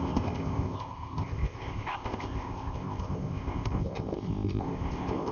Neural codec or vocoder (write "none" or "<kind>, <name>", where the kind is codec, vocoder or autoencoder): codec, ZipCodec